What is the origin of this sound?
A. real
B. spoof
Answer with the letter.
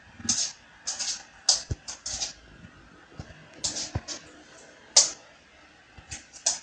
A